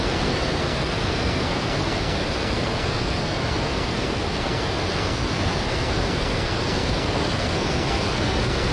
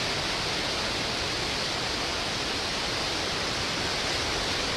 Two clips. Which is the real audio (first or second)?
second